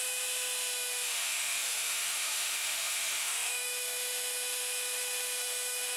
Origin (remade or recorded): remade